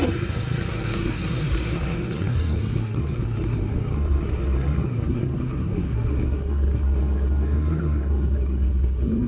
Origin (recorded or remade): remade